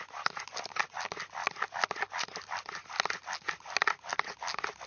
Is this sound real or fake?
real